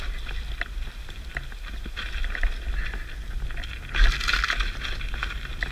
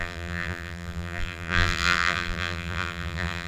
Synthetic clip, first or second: second